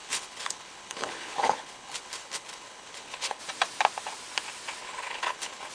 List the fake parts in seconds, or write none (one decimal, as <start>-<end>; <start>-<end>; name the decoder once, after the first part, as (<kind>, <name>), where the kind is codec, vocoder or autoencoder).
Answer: 0.0-3.4 (codec, HILCodec); 4.8-5.7